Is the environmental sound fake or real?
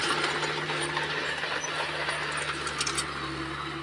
real